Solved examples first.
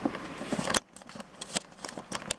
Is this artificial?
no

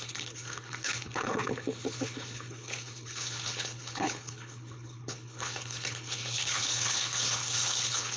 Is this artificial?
yes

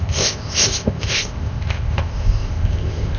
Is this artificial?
yes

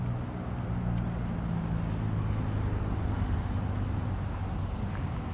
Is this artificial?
no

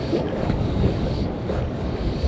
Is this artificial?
yes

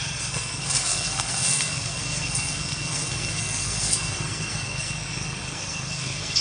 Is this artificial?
yes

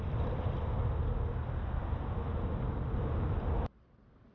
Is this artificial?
no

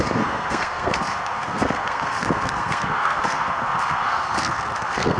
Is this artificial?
yes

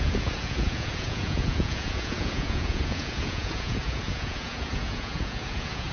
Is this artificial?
yes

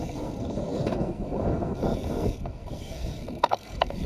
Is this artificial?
yes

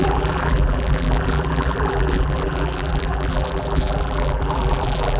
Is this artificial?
yes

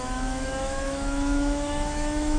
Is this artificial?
yes